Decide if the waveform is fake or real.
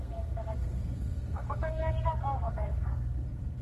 fake